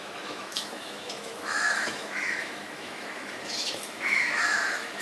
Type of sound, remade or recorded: remade